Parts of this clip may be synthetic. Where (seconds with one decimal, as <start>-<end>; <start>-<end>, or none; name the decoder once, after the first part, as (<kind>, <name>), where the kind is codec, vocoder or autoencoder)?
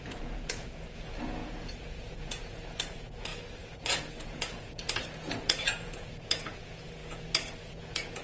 0.0-8.2 (vocoder, Vocos)